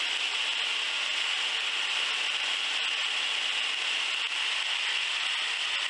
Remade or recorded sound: recorded